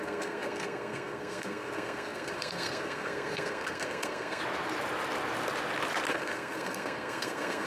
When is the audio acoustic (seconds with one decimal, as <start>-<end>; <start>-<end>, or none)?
4.4-6.1